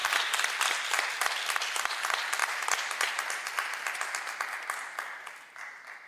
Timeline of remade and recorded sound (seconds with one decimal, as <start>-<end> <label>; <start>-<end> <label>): 0.0-6.1 recorded